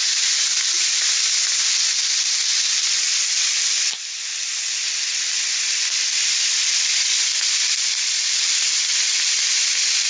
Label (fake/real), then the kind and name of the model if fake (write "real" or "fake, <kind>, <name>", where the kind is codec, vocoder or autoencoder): real